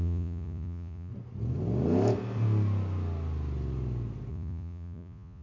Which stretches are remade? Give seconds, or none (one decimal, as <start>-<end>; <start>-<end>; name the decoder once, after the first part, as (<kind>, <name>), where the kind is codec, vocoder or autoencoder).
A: 0.0-1.1 (vocoder, Vocos); 4.3-5.4